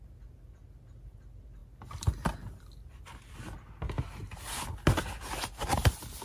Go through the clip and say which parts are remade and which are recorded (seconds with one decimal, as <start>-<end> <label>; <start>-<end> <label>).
0.0-6.2 recorded